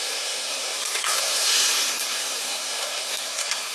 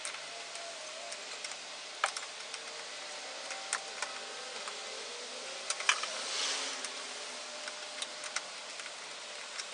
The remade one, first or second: first